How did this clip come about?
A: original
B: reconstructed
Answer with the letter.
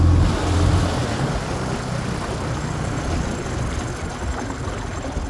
A